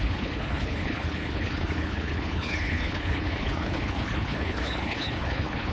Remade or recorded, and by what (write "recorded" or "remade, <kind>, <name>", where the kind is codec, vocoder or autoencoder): remade, codec, HILCodec